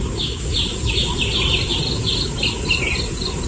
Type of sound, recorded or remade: recorded